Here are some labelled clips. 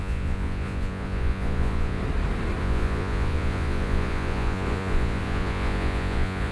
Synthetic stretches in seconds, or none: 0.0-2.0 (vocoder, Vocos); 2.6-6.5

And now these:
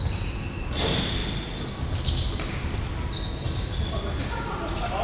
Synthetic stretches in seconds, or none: none

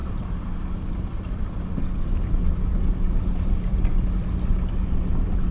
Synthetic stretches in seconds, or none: none

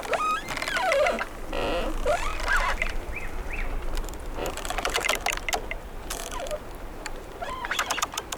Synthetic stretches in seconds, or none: 2.3-3.1 (vocoder, BigVGAN v2); 4.4-5.1; 6.1-7.8